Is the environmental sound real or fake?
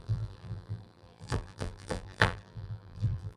fake